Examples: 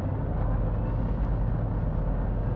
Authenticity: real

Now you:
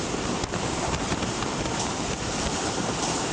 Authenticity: fake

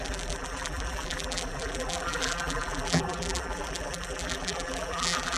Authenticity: fake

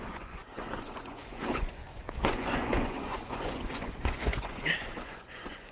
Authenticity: fake